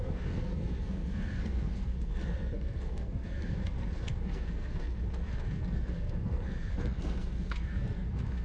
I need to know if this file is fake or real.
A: fake